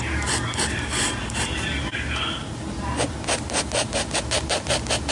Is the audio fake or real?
real